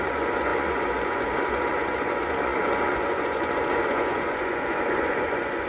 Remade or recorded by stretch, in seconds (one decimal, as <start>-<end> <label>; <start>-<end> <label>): 0.0-5.7 remade